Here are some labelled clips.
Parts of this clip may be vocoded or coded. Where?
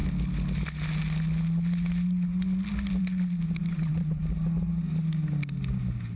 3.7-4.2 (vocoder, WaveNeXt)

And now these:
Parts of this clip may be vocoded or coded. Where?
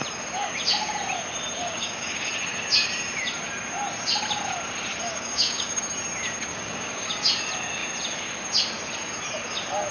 1.6-2.3 (codec, DAC); 5.1-5.8; 6.5-7.1